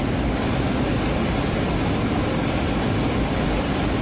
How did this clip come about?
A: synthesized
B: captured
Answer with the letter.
B